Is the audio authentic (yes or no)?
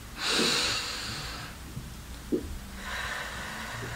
yes